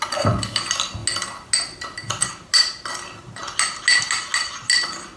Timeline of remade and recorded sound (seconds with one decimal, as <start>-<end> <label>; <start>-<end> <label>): 0.0-5.2 recorded